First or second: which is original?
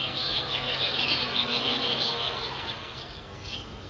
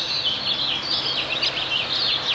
second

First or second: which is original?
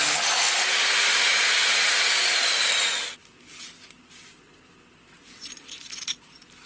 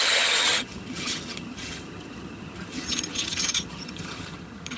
first